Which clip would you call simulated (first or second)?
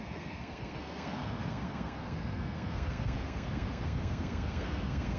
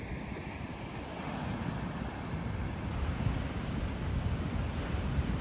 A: first